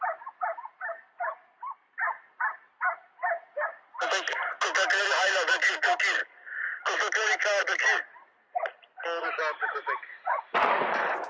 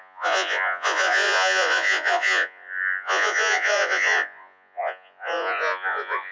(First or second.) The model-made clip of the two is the second